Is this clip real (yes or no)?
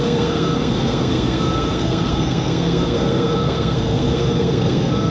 no